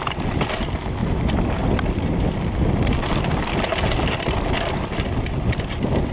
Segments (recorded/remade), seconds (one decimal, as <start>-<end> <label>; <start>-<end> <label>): 0.0-6.1 recorded